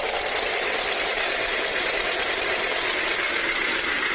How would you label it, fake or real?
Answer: fake